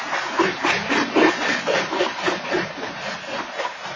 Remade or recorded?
recorded